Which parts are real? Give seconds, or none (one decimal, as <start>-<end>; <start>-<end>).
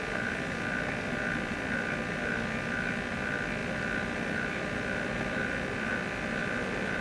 0.0-3.6; 5.9-6.4